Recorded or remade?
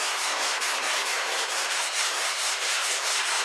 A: remade